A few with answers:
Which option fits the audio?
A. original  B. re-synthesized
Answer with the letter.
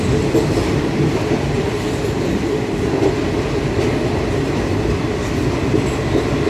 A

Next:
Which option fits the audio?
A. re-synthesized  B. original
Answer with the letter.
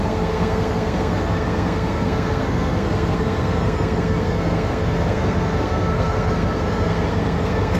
A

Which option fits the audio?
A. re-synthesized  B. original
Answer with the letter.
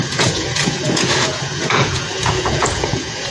A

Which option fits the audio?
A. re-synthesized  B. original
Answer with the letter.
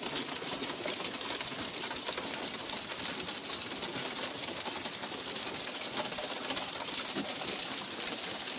B